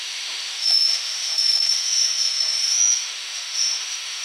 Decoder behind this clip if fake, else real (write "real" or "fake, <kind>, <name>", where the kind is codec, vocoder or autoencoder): fake, autoencoder, DAC-VAE